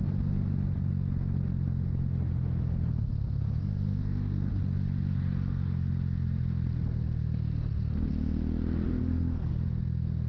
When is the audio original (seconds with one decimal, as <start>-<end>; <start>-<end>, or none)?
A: 0.0-3.6; 4.5-9.0; 9.5-10.3